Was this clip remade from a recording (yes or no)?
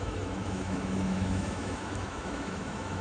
yes